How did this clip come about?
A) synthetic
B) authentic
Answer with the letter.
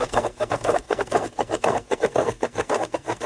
A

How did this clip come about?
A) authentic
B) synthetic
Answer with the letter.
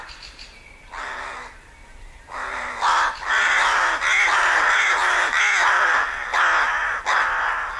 A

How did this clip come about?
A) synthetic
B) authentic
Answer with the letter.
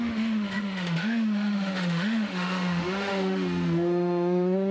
A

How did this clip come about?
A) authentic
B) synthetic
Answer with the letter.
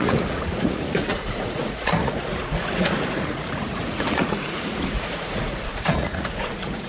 B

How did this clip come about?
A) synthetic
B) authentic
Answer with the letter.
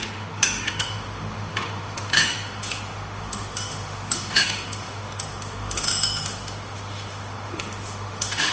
A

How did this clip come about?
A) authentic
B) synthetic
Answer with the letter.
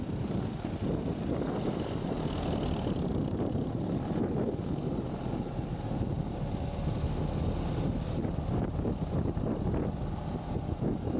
A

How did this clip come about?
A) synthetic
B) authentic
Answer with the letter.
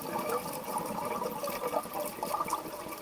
B